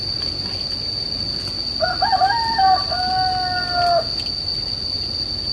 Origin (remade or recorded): recorded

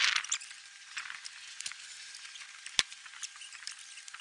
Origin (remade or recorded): recorded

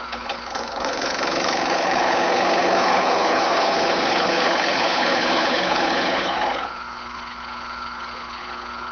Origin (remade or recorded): remade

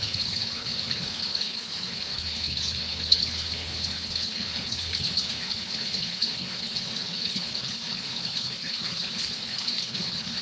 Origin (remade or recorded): remade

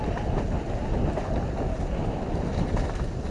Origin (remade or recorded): recorded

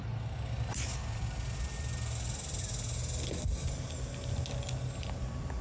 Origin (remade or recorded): recorded